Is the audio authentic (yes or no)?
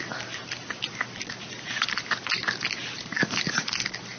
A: yes